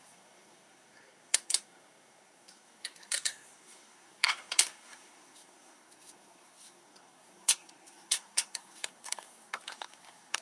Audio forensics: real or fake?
fake